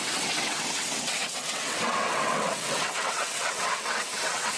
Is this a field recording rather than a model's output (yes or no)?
no